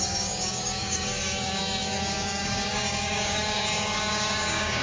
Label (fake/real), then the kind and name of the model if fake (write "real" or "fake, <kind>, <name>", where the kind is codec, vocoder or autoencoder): fake, codec, DAC